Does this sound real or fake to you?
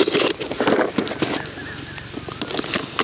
real